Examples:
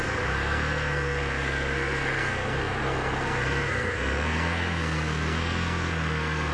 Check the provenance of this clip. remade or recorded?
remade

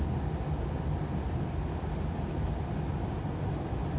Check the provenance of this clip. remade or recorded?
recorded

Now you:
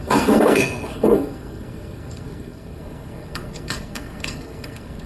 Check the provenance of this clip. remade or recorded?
remade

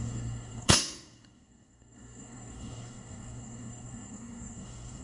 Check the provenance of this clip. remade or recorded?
remade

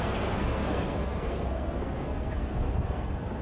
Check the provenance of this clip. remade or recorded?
remade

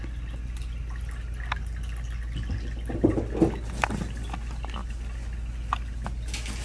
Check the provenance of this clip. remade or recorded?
recorded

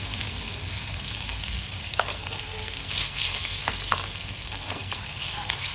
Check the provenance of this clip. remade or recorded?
remade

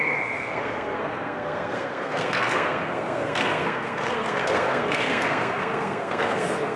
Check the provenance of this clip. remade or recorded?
remade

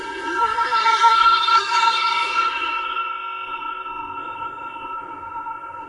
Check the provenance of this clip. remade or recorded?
remade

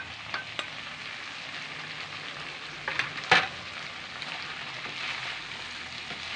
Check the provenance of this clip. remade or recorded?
recorded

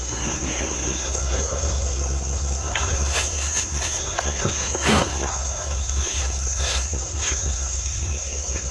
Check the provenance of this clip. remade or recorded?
remade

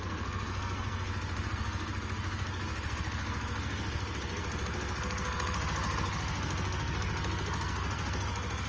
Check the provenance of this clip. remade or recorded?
remade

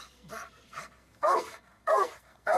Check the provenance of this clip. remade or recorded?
remade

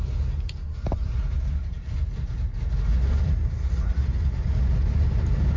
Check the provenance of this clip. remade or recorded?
recorded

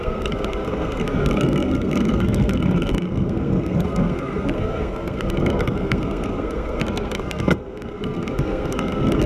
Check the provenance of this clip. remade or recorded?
remade